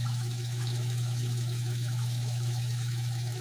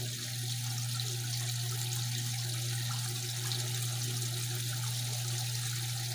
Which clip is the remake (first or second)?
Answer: first